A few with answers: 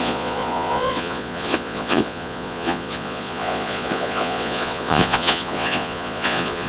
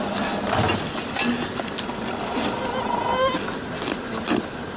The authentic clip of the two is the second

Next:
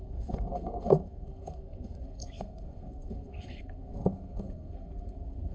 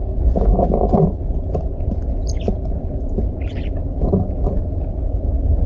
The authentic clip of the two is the second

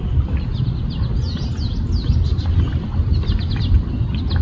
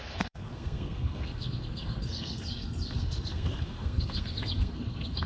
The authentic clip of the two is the first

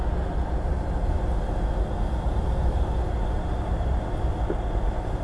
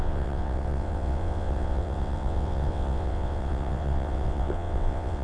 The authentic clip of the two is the first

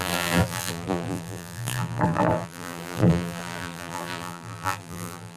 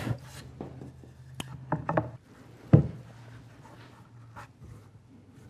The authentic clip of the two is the second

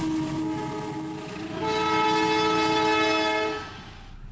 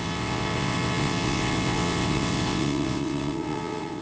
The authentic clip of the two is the first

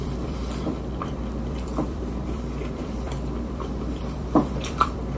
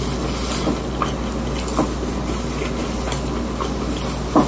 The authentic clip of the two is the second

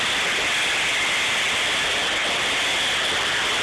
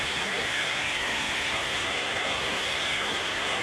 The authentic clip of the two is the first